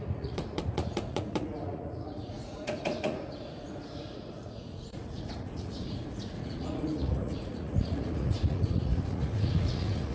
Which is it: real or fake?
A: fake